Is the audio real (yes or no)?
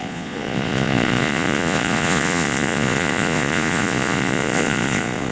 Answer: no